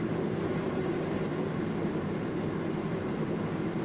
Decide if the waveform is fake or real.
fake